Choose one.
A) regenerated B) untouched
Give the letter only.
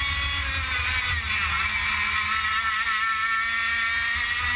B